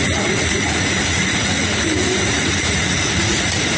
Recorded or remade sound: remade